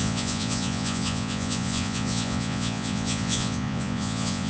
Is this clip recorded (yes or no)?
no